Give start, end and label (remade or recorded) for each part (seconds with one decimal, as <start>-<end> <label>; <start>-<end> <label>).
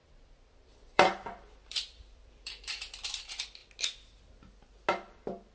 0.0-3.2 remade; 3.2-5.5 recorded